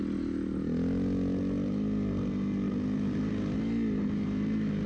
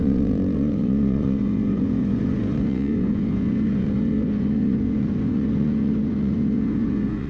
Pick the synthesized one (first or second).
second